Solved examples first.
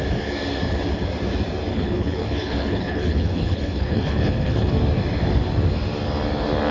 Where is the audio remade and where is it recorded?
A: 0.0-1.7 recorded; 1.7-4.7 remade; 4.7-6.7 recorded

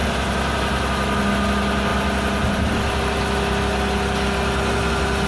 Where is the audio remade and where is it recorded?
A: 0.0-5.3 recorded

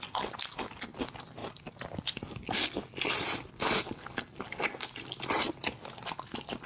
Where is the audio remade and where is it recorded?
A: 0.0-6.7 recorded

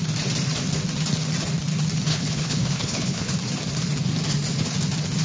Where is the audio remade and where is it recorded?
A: 0.0-2.1 recorded; 2.1-3.3 remade; 3.3-5.2 recorded

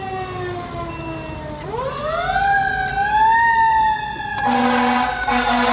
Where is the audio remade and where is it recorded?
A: 0.0-5.7 recorded